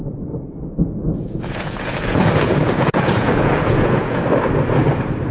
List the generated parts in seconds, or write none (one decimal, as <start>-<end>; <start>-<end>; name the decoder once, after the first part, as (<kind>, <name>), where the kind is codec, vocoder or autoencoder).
1.0-4.2 (vocoder, Vocos)